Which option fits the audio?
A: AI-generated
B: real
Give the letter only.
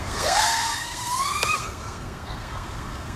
A